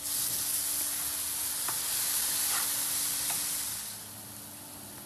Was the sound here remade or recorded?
recorded